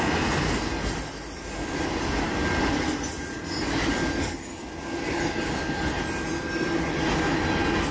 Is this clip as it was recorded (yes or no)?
yes